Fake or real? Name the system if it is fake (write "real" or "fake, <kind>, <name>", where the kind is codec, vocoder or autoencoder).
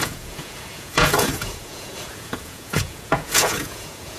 fake, vocoder, Vocos